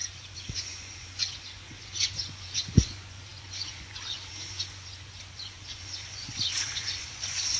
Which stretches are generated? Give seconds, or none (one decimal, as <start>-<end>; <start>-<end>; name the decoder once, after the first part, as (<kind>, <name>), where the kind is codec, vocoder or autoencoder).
0.0-7.6 (vocoder, Vocos)